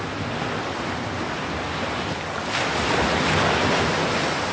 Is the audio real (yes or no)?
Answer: yes